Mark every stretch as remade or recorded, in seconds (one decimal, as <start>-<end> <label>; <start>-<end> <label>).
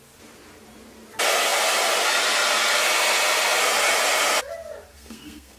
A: 0.0-4.9 recorded; 4.9-5.6 remade